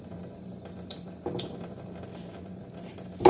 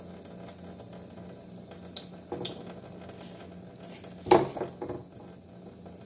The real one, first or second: second